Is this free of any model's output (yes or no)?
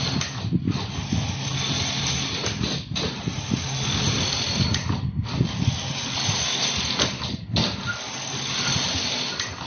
yes